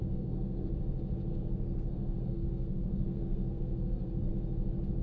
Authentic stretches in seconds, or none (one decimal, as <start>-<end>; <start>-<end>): 0.7-1.3; 4.3-5.0